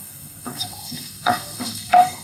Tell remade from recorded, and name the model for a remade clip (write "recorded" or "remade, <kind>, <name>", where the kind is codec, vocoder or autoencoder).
remade, codec, SNAC